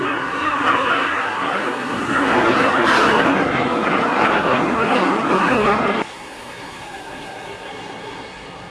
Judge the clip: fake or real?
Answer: fake